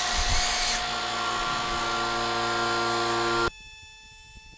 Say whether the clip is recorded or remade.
recorded